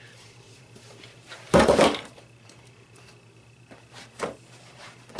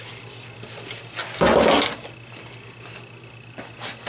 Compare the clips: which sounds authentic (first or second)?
second